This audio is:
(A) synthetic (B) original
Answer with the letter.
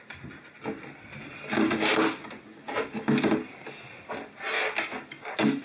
B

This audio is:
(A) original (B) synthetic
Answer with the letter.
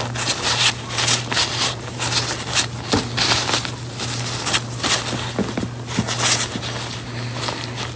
A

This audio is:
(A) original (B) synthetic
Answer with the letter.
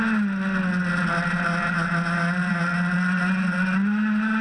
A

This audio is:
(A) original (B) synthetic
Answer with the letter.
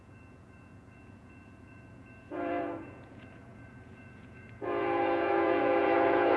B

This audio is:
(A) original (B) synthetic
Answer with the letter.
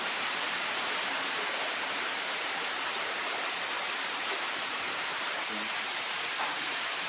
B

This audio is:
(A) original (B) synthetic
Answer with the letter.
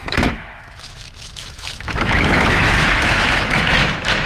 B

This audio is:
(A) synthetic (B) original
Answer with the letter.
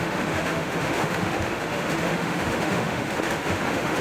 A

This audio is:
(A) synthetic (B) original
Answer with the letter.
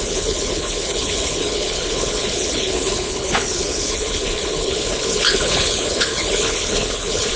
A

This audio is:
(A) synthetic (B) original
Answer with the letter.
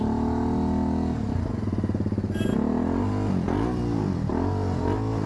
B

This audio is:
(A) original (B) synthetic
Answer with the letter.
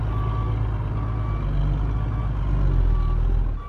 A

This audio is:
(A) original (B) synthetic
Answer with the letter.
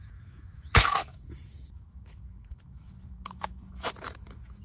B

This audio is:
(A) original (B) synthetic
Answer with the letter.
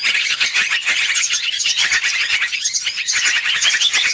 B